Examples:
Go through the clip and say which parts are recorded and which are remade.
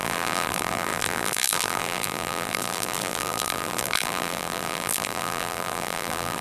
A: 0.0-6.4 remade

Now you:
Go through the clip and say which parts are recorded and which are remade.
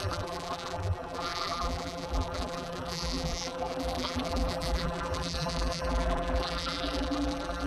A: 0.0-7.7 remade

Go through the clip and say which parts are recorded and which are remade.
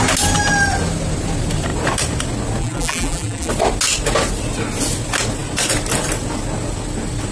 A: 0.0-2.6 recorded; 2.6-3.5 remade; 3.5-7.3 recorded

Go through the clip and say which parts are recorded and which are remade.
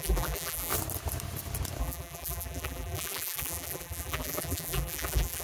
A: 0.0-0.7 remade; 0.7-1.8 recorded; 1.8-5.4 remade